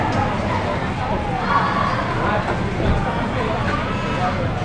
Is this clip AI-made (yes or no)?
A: no